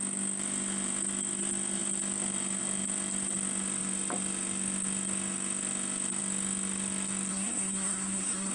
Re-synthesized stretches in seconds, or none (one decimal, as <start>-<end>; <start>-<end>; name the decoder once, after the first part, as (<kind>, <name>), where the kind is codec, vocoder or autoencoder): 7.3-8.5 (codec, SNAC)